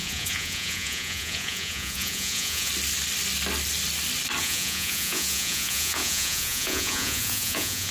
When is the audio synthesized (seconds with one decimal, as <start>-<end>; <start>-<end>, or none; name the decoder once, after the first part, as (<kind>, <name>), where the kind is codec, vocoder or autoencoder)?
0.0-2.7 (vocoder, Vocos); 4.4-7.9